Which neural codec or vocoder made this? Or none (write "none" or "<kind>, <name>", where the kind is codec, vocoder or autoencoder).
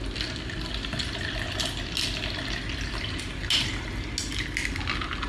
none